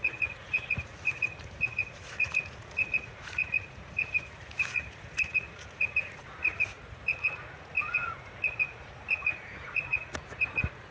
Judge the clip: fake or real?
fake